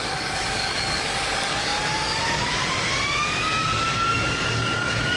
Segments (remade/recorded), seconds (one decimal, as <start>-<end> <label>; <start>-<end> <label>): 0.0-5.2 remade